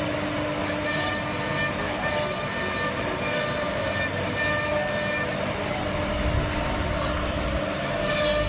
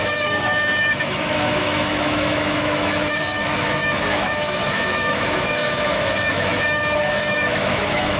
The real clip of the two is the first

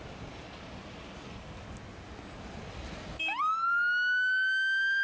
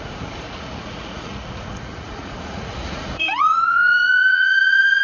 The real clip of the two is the first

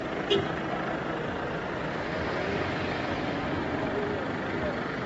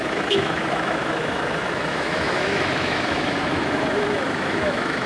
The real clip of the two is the first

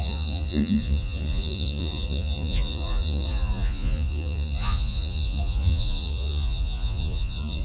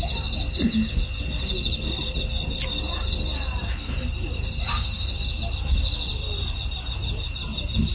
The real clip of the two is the second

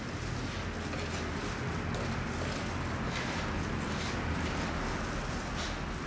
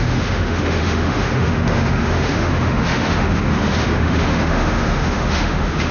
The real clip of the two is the first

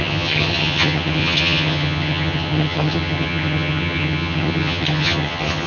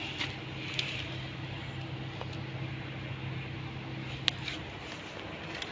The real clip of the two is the second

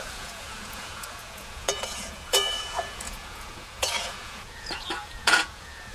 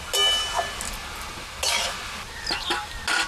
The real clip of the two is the second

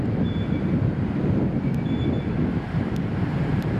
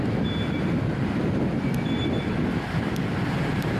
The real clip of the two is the second